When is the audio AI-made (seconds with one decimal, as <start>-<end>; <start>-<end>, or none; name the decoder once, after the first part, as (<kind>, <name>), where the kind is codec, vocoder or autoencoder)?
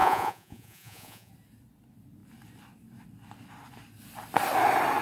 0.0-1.3 (vocoder, Vocos)